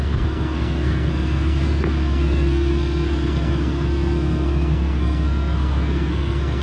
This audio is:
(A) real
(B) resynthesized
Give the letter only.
B